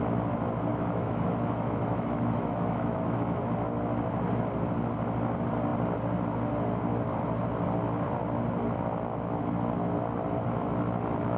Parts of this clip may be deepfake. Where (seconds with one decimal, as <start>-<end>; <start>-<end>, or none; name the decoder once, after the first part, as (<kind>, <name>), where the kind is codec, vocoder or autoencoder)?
0.7-3.4 (autoencoder, DAC-VAE)